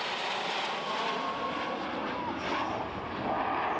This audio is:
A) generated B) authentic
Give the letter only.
B